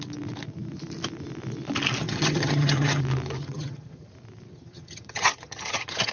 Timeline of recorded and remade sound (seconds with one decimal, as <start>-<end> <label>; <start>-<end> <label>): 0.0-2.0 recorded; 2.0-3.0 remade; 3.0-3.4 recorded; 3.4-4.1 remade; 4.1-4.5 recorded; 4.5-6.1 remade